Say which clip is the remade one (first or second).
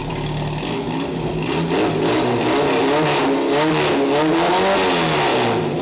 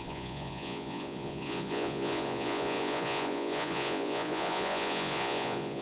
second